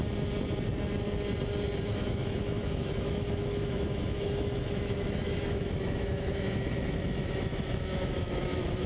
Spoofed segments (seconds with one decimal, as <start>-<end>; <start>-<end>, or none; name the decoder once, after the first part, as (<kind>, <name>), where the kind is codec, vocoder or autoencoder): 1.8-8.9 (autoencoder, DAC-VAE)